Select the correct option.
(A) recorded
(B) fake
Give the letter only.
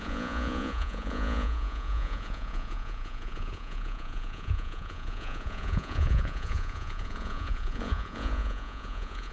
B